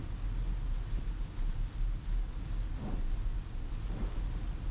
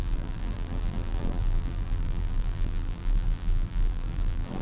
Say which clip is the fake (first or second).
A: second